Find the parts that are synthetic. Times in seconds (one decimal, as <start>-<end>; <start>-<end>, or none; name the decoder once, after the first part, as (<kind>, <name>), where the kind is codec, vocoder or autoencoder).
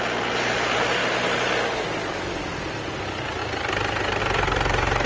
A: none